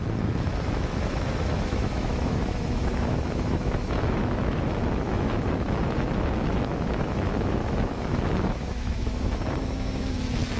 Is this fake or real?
fake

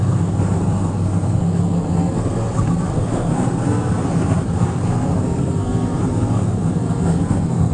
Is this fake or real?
fake